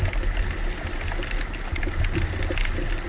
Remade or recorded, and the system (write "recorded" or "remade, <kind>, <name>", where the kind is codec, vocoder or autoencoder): recorded